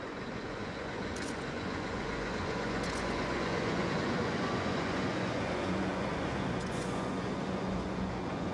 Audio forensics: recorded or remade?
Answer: remade